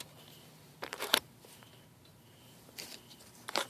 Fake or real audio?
fake